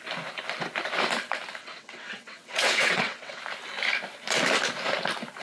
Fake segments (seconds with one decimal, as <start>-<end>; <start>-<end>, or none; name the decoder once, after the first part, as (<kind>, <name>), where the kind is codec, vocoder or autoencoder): 1.6-3.4 (vocoder, WaveNeXt)